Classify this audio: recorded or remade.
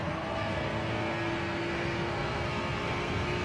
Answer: remade